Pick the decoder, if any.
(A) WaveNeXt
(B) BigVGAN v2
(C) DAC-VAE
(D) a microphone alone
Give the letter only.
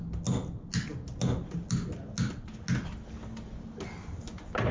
D